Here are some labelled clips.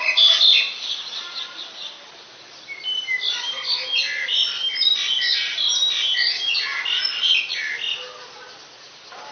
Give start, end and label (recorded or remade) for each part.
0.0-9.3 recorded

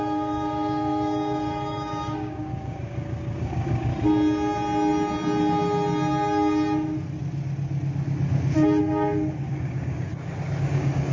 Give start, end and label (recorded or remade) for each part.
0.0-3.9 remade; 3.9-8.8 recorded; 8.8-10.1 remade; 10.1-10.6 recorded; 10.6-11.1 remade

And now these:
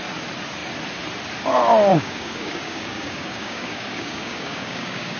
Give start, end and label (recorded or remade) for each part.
0.0-1.9 recorded; 1.9-5.2 remade

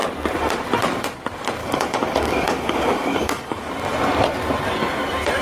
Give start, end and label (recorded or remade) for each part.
0.0-1.6 recorded; 1.6-3.7 remade; 3.7-5.4 recorded

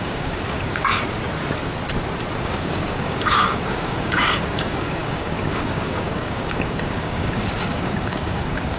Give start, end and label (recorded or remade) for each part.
0.0-0.9 remade; 0.9-2.4 recorded; 2.4-8.8 remade